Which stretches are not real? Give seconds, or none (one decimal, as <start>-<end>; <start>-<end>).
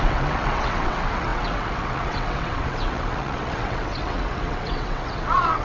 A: 0.0-5.6